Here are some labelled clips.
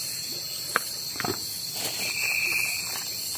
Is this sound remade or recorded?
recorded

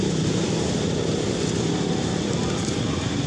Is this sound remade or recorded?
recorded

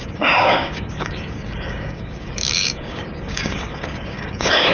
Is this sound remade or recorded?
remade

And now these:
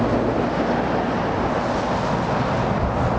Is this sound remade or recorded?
recorded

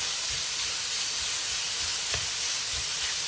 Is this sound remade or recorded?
recorded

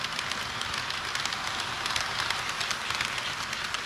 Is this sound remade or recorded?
recorded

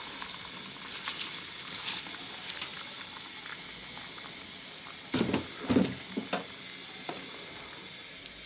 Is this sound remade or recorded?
recorded